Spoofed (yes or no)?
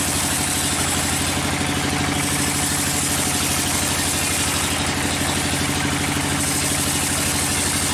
no